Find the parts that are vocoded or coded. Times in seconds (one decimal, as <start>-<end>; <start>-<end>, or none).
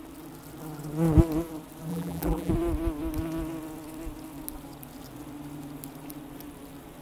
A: 1.9-2.5